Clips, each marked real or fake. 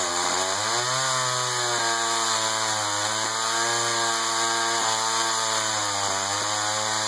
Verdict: real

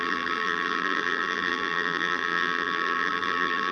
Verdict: fake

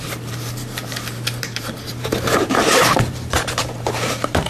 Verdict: fake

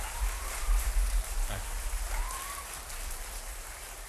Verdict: fake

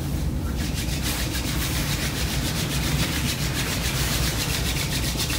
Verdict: fake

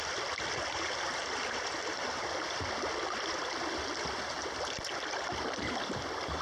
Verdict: fake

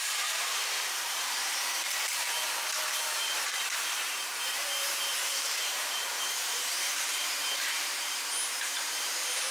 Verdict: fake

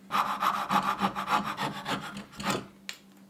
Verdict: real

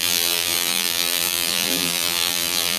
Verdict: fake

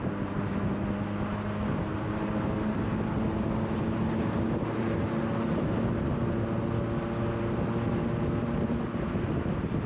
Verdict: real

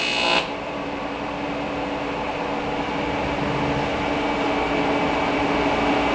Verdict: real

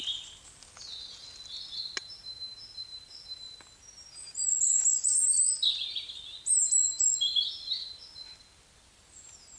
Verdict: real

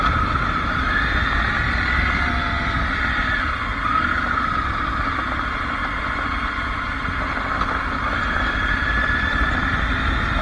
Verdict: real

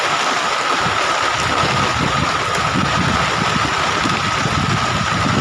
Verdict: fake